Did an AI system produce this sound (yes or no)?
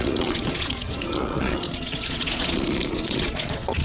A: yes